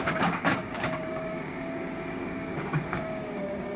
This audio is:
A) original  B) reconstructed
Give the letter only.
B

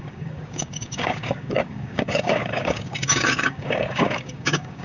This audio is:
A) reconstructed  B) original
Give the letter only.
A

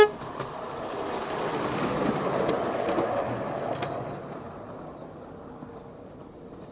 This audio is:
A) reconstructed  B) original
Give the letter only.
B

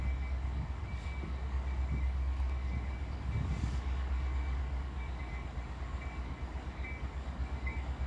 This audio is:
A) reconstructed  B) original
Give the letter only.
A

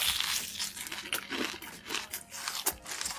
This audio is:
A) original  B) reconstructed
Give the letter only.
A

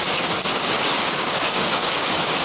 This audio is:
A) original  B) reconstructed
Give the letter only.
B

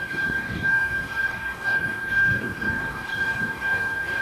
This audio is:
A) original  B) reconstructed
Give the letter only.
B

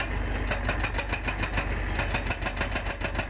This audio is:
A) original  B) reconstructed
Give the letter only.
A